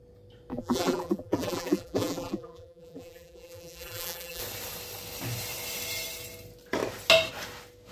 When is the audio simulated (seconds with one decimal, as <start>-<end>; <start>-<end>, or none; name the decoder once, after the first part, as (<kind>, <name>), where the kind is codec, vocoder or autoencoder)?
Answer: 0.5-4.4 (vocoder, BigVGAN v2)